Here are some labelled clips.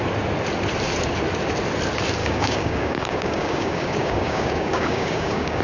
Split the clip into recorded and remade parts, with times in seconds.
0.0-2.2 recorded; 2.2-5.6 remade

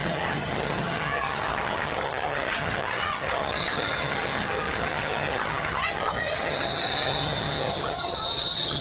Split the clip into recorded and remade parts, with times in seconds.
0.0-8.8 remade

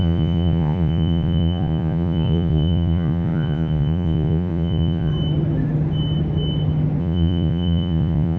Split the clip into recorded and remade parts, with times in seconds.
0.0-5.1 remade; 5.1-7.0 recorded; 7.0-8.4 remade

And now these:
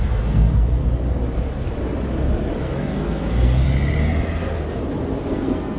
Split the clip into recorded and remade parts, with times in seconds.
0.0-0.8 remade; 0.8-2.6 recorded; 2.6-3.6 remade; 3.6-5.3 recorded; 5.3-5.8 remade

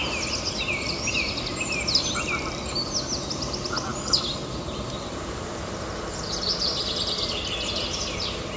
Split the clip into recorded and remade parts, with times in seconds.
0.0-8.6 recorded